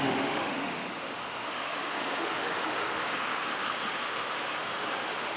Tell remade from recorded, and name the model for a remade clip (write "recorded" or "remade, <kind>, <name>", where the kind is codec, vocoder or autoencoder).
remade, autoencoder, DAC-VAE